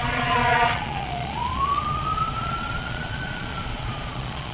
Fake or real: fake